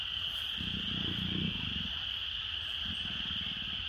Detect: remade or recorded recorded